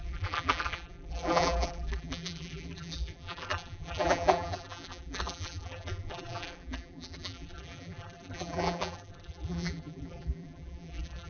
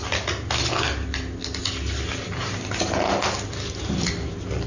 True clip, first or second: second